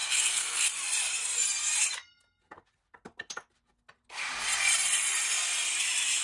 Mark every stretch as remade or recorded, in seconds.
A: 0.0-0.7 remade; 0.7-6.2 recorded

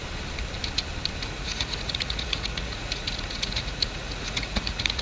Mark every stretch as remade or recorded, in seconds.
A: 0.0-1.2 recorded; 1.2-5.0 remade

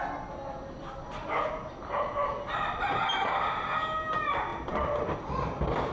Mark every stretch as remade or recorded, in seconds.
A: 0.0-5.9 recorded

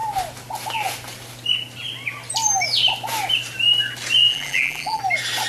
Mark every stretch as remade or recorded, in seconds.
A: 0.0-4.3 recorded; 4.3-5.0 remade; 5.0-5.5 recorded

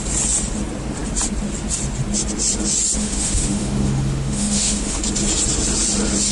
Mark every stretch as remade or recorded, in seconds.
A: 0.0-3.0 recorded; 3.0-5.0 remade; 5.0-6.3 recorded

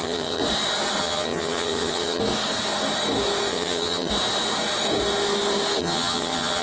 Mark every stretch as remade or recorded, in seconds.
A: 0.0-0.4 remade; 0.4-1.0 recorded; 1.0-2.2 remade; 2.2-3.5 recorded; 3.5-4.1 remade; 4.1-5.8 recorded; 5.8-6.6 remade

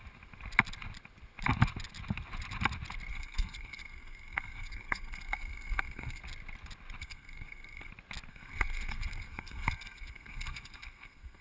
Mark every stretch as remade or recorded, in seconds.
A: 0.0-3.1 recorded; 3.1-6.2 remade; 6.2-7.0 recorded; 7.0-7.9 remade; 7.9-8.3 recorded; 8.3-11.4 remade